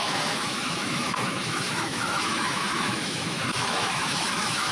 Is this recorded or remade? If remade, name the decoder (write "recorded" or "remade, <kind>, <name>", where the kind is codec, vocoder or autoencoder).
remade, autoencoder, DAC-VAE